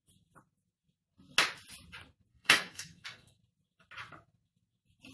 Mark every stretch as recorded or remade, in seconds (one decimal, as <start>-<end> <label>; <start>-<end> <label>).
0.0-2.3 recorded; 2.3-3.4 remade; 3.4-5.1 recorded